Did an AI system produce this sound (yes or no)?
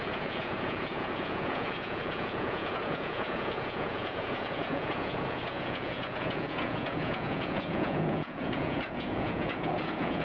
yes